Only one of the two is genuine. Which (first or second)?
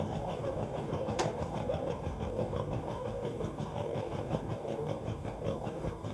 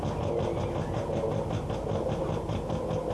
second